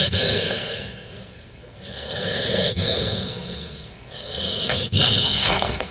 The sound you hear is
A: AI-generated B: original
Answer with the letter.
A